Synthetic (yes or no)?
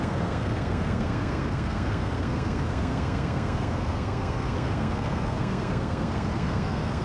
yes